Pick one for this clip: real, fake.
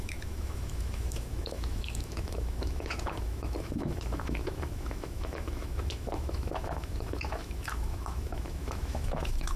fake